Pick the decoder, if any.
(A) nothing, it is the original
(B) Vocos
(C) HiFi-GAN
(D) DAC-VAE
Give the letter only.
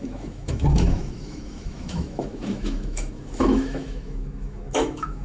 D